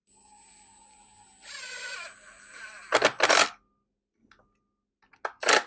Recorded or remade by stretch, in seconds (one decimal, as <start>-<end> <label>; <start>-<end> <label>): 0.0-5.7 recorded